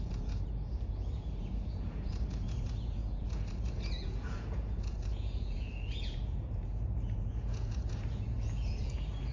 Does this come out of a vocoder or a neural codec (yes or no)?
yes